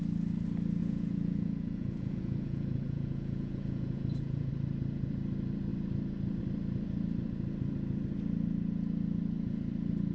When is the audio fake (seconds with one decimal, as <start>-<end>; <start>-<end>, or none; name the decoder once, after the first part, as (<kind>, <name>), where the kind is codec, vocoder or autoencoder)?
0.8-4.5 (vocoder, Vocos)